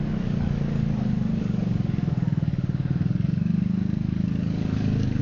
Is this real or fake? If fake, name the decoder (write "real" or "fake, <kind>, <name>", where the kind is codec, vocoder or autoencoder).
fake, codec, DAC